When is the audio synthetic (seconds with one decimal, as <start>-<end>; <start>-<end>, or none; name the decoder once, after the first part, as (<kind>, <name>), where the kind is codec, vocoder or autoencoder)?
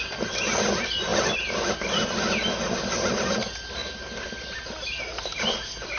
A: none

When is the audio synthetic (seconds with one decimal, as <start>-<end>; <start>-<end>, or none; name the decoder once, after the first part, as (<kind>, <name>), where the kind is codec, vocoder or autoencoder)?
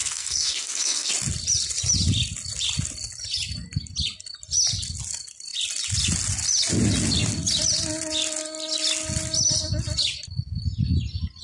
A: 0.0-1.1 (codec, SNAC)